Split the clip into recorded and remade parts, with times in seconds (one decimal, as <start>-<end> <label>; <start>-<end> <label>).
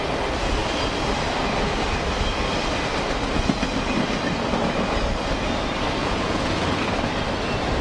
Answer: 0.0-6.0 recorded; 6.0-6.8 remade; 6.8-7.8 recorded